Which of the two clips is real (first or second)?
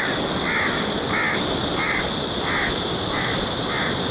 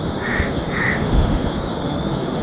first